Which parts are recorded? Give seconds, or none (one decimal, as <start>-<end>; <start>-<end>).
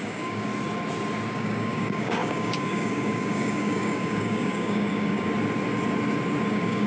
0.5-1.3; 5.3-6.5